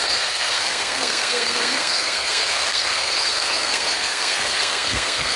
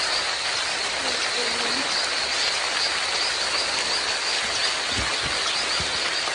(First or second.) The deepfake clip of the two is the first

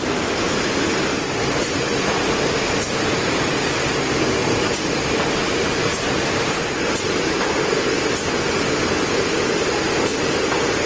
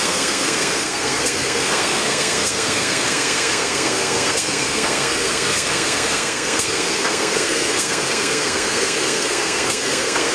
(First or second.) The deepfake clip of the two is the second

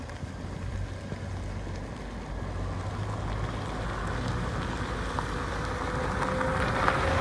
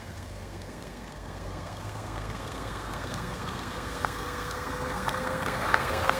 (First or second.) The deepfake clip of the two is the second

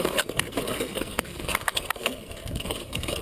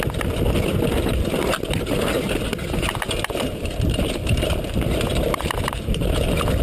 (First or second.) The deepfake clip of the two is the first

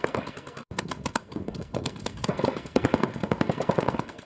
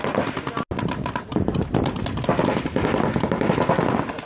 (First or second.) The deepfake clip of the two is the first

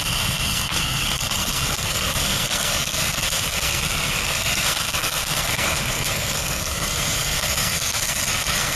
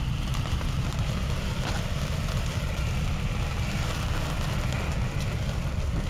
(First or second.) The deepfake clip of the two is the first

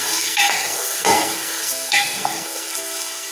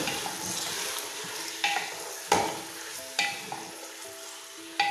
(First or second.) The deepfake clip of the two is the first